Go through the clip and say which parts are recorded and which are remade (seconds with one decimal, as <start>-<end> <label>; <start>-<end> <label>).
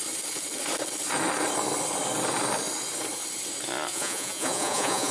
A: 0.0-3.9 recorded; 3.9-5.1 remade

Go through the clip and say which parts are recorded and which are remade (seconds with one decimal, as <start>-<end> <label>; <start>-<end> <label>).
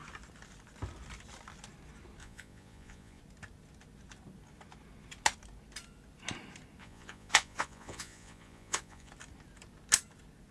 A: 0.0-2.2 recorded; 2.2-3.2 remade; 3.2-6.8 recorded; 6.8-9.1 remade; 9.1-10.5 recorded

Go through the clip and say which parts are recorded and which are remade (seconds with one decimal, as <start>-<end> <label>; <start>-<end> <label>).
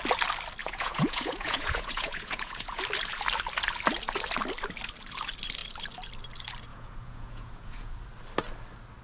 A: 0.0-0.6 recorded; 0.6-2.8 remade; 2.8-6.7 recorded; 6.7-7.9 remade; 7.9-9.0 recorded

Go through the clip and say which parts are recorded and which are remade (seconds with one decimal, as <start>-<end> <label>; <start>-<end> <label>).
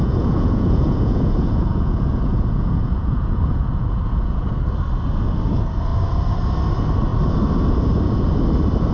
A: 0.0-4.6 remade; 4.6-8.9 recorded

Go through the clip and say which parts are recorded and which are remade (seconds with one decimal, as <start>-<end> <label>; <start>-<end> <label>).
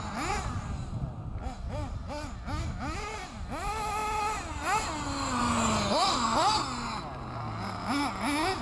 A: 0.0-8.6 recorded